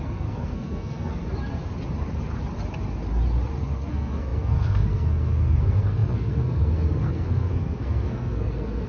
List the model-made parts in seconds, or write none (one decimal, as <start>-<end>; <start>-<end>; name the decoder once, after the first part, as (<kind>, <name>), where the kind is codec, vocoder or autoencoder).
0.0-1.2 (codec, SNAC); 3.6-8.9